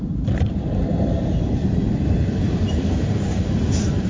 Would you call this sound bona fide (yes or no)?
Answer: no